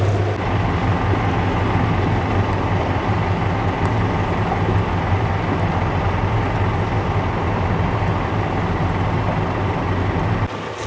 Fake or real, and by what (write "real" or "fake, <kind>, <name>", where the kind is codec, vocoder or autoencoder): real